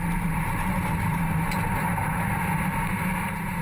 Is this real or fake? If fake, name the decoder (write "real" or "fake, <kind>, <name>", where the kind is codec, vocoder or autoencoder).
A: fake, vocoder, BigVGAN v2